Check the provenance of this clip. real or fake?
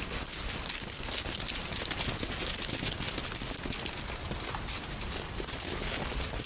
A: real